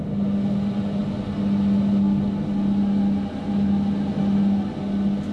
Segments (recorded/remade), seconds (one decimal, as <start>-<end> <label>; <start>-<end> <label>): 0.0-5.3 recorded